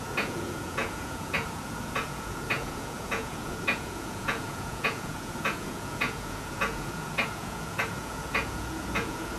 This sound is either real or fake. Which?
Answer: fake